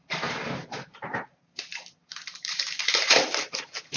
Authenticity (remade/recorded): remade